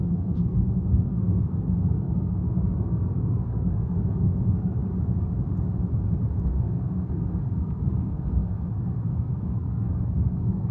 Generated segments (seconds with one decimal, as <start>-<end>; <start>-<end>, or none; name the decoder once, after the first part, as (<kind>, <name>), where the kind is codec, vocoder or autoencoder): 0.0-4.8 (codec, SNAC); 6.4-10.7